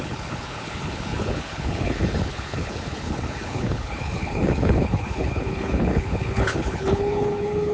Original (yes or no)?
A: no